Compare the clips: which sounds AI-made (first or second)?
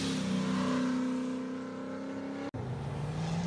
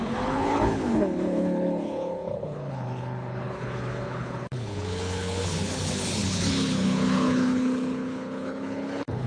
second